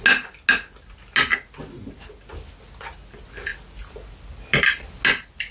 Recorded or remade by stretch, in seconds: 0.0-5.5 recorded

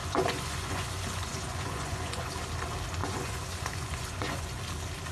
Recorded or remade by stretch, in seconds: 0.0-2.3 remade; 2.3-3.0 recorded; 3.0-4.6 remade; 4.6-5.1 recorded

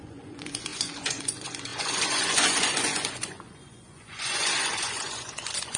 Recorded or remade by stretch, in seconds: 0.0-5.8 remade

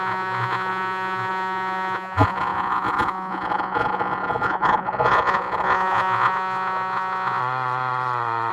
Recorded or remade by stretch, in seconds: 0.0-7.4 remade; 7.4-8.5 recorded